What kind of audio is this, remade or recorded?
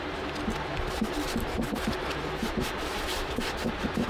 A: remade